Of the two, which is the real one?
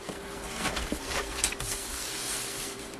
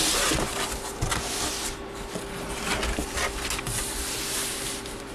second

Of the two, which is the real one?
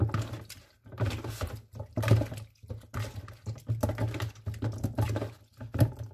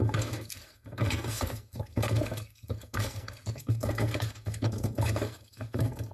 first